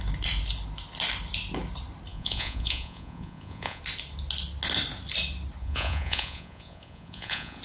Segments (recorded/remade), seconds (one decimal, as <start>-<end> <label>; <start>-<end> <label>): 0.0-2.1 recorded; 2.1-3.8 remade; 3.8-5.6 recorded; 5.6-7.6 remade